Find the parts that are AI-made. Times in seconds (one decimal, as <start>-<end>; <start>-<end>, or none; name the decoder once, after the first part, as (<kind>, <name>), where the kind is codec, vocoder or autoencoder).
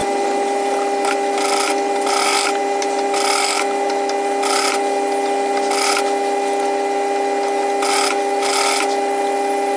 none